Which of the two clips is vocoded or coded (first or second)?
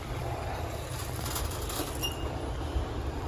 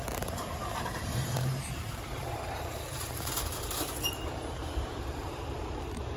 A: second